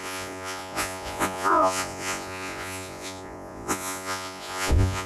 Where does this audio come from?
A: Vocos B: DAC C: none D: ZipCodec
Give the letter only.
A